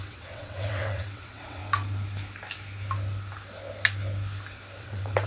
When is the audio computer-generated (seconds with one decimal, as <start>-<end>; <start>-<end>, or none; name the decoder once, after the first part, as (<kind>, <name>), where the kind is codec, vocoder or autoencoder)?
0.0-1.6 (vocoder, WaveNeXt); 4.8-5.3